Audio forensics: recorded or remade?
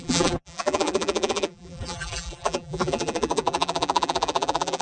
remade